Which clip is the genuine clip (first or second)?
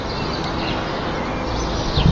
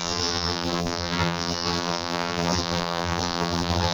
first